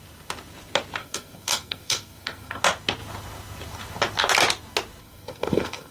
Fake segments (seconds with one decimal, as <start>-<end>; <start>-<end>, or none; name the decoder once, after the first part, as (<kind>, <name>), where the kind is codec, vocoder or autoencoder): 1.0-2.6 (codec, SNAC); 5.0-5.9